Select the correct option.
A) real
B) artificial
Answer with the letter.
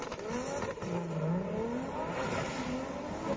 A